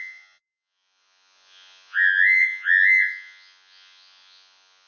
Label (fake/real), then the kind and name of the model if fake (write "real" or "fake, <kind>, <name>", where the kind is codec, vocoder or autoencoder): fake, vocoder, Vocos